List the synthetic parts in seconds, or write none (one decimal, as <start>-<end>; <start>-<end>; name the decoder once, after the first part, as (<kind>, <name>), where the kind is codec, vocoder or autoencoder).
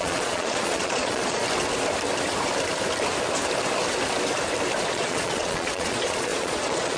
0.0-1.4 (vocoder, Vocos); 4.8-7.0